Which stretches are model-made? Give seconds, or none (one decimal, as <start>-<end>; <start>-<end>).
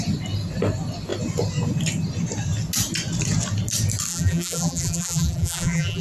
4.1-6.0